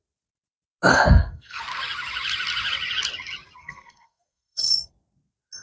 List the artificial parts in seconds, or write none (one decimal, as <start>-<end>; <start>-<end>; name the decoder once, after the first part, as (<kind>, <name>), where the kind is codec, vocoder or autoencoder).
0.9-1.6 (codec, SNAC); 3.6-4.9

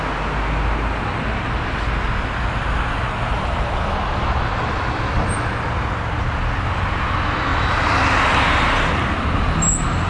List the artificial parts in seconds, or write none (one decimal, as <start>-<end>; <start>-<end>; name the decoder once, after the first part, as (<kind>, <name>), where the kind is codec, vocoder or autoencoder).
none

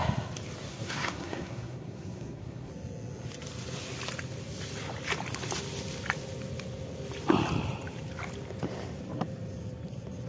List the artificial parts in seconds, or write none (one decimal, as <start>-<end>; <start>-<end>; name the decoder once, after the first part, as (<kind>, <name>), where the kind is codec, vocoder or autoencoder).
0.7-2.7 (codec, SNAC)

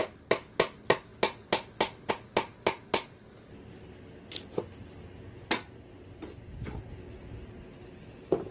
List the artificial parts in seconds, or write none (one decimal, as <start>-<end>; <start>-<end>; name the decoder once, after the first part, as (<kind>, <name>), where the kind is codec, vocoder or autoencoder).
none

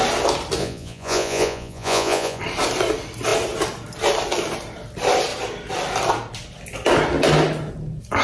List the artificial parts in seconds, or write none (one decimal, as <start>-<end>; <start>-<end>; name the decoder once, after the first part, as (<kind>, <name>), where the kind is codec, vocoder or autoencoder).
0.6-2.4 (vocoder, Vocos)

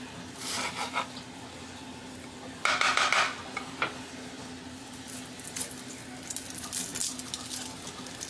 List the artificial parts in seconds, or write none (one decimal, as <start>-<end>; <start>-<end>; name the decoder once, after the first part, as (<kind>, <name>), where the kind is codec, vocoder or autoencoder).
none